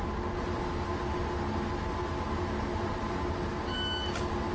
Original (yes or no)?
yes